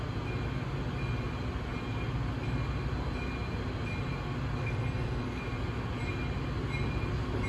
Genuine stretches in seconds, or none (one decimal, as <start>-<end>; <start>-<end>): 0.0-4.6; 5.4-7.5